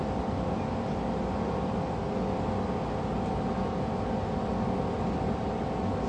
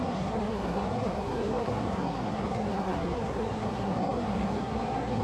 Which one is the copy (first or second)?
second